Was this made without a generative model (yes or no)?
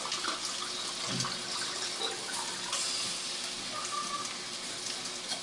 yes